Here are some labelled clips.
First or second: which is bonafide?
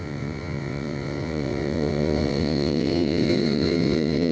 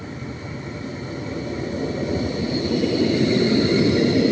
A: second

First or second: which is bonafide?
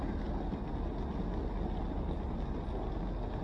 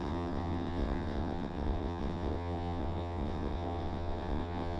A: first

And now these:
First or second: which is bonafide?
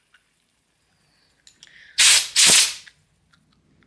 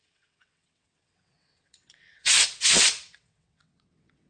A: first